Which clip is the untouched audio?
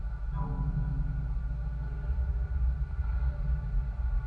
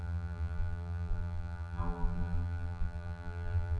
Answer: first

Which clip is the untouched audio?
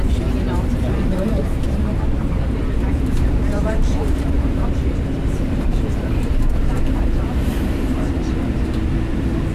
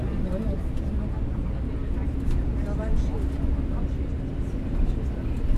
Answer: second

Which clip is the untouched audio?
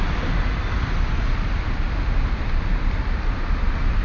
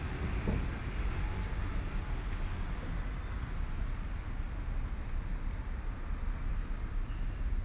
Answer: second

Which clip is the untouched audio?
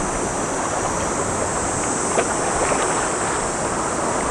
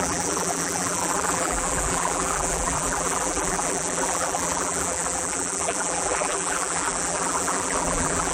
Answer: first